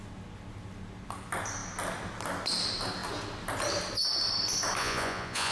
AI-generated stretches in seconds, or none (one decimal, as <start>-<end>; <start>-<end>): 4.8-5.5